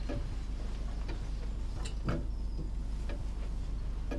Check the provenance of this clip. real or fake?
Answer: real